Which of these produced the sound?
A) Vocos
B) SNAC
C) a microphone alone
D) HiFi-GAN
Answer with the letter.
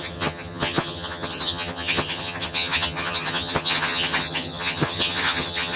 D